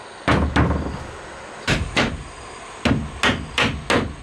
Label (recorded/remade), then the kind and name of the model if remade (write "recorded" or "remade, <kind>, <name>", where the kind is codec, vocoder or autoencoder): recorded